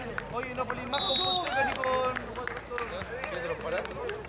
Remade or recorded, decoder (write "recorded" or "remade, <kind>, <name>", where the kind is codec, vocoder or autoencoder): recorded